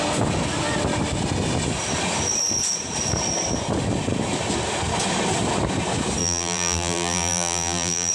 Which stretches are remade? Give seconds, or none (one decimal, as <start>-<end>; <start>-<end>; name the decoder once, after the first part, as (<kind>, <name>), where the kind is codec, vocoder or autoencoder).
6.2-8.1 (vocoder, BigVGAN v2)